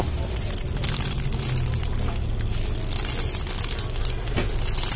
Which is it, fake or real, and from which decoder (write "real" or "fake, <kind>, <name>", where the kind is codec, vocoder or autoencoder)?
real